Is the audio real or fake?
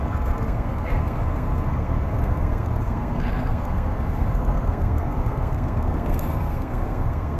fake